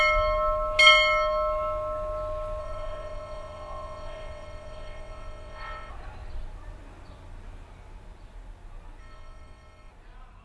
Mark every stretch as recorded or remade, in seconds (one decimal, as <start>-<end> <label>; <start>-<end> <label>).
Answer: 0.0-2.6 recorded; 2.6-5.9 remade; 5.9-9.0 recorded; 9.0-9.9 remade; 9.9-10.4 recorded